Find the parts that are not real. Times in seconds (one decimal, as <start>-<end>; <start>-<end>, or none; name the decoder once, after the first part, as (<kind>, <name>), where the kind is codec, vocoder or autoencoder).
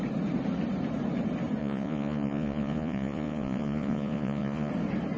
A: 1.6-4.7 (vocoder, Vocos)